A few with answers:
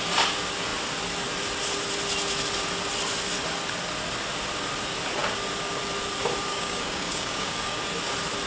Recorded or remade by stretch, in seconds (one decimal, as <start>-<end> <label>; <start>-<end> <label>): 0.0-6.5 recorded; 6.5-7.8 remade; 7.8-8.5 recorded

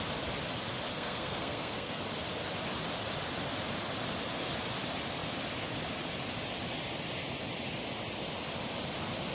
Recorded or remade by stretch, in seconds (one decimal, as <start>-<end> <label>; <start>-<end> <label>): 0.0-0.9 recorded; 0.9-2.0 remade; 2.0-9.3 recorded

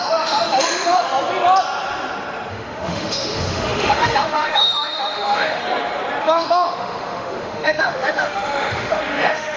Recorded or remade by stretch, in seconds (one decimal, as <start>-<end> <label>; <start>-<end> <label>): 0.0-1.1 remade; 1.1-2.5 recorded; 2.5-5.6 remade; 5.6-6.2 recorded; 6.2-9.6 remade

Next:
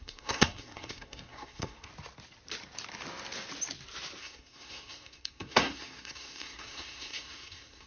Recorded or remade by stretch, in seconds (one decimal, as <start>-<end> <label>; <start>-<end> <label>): 0.0-1.9 remade; 1.9-4.2 recorded; 4.2-7.9 remade

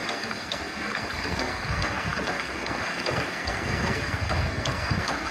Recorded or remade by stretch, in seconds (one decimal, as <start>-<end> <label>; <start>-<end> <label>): 0.0-5.3 remade

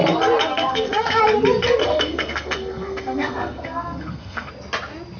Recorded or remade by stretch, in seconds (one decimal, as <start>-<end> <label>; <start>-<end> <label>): 0.0-0.5 recorded; 0.5-1.2 remade; 1.2-1.8 recorded; 1.8-4.5 remade; 4.5-5.2 recorded

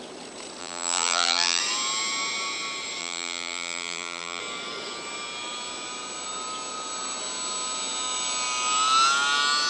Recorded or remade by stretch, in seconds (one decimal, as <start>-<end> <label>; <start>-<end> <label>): 0.0-0.6 recorded; 0.6-1.6 remade; 1.6-3.0 recorded; 3.0-4.4 remade; 4.4-9.7 recorded

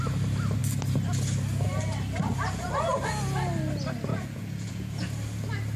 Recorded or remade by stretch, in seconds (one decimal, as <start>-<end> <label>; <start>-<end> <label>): 0.0-4.1 recorded; 4.1-4.9 remade; 4.9-5.8 recorded